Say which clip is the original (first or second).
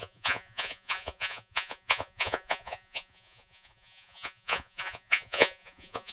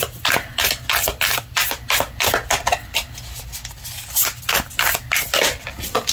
second